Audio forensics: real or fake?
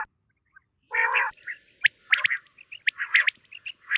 real